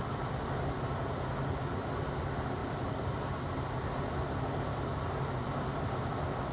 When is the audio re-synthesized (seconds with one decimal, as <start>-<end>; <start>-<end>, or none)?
2.6-6.5